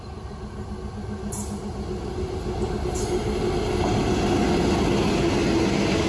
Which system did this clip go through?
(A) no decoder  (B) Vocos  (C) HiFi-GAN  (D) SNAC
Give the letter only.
A